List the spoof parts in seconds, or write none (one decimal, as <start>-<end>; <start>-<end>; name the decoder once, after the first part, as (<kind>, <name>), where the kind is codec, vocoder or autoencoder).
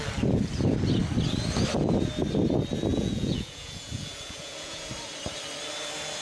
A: 2.9-4.9 (vocoder, Vocos)